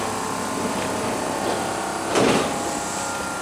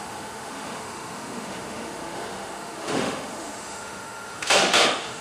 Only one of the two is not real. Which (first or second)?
second